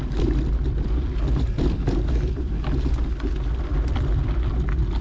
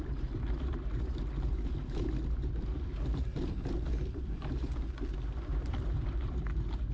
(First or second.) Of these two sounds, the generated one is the second